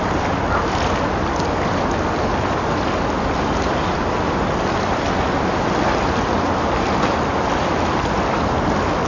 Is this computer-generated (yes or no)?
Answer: no